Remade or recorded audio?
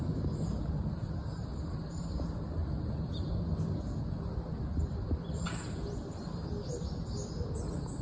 recorded